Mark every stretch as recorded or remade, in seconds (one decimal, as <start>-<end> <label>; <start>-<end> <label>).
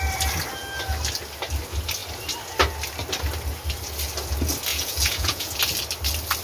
0.0-4.7 recorded; 4.7-5.6 remade; 5.6-6.4 recorded